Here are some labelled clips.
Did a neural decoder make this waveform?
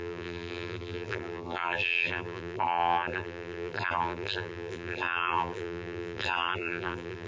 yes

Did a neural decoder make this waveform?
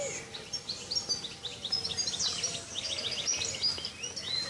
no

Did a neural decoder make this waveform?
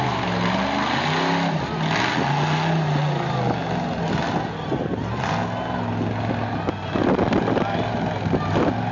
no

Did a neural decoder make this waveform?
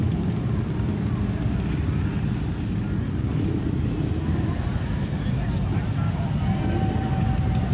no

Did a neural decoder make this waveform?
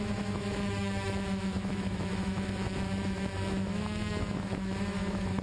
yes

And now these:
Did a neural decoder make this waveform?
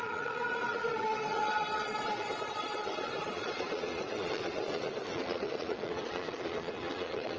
yes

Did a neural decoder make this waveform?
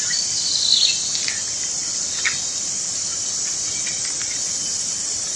no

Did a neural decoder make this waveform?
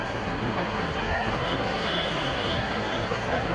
yes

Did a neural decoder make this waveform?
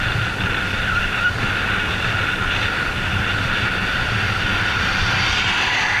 no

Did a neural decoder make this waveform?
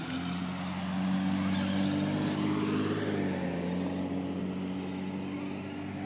no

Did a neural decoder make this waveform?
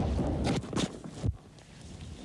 no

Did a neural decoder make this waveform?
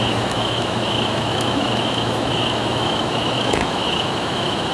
yes